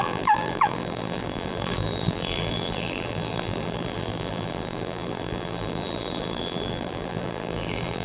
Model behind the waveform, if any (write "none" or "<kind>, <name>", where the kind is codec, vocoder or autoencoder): vocoder, BigVGAN v2